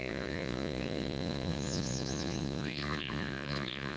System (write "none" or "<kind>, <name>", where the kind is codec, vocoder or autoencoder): vocoder, Vocos